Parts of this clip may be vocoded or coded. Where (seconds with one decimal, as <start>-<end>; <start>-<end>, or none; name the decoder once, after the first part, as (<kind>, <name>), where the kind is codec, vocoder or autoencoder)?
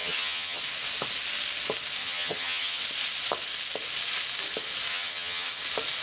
0.0-0.6 (vocoder, HiFi-GAN); 2.0-2.8; 4.9-5.6